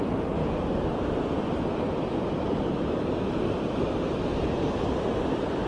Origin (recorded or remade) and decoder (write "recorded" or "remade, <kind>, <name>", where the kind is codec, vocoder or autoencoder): recorded